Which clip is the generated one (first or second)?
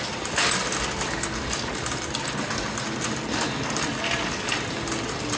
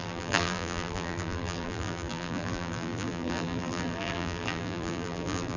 second